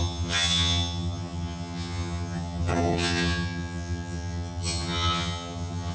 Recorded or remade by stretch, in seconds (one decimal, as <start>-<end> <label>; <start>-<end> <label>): 0.0-5.9 remade